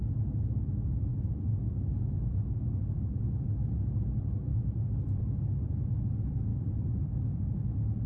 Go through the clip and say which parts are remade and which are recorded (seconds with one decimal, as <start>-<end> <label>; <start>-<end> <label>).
0.0-1.1 recorded; 1.1-1.8 remade; 1.8-6.5 recorded; 6.5-7.1 remade; 7.1-8.1 recorded